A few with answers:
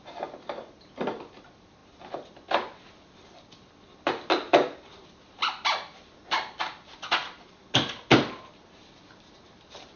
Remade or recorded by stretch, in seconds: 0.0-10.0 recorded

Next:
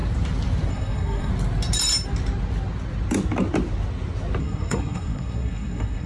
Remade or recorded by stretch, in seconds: 0.0-0.7 recorded; 0.7-1.3 remade; 1.3-4.4 recorded; 4.4-6.1 remade

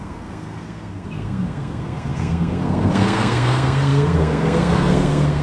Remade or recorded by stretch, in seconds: 0.0-5.4 remade

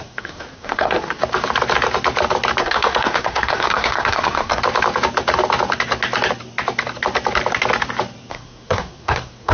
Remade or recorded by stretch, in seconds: 0.0-1.2 remade; 1.2-2.6 recorded; 2.6-4.6 remade; 4.6-8.3 recorded; 8.3-9.5 remade

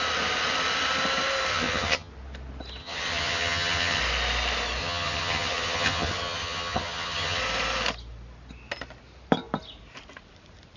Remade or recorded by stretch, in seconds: 0.0-1.5 recorded; 1.5-2.1 remade; 2.1-2.8 recorded; 2.8-4.0 remade; 4.0-4.8 recorded; 4.8-7.4 remade; 7.4-10.8 recorded